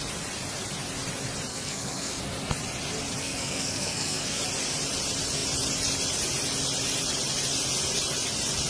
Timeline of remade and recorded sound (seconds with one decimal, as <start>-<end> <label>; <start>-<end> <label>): 0.0-1.5 recorded; 1.5-2.2 remade; 2.2-3.2 recorded; 3.2-4.4 remade; 4.4-8.7 recorded